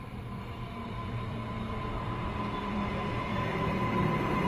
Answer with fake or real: fake